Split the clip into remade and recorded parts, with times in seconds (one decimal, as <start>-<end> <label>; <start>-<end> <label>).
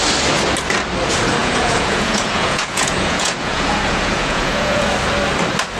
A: 0.0-1.4 recorded; 1.4-4.9 remade; 4.9-5.8 recorded